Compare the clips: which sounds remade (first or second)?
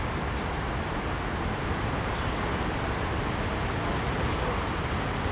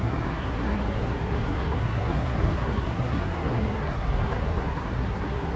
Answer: second